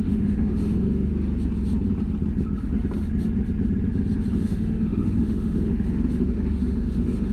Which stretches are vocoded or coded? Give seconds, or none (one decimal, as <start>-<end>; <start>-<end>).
0.0-1.1; 4.3-7.3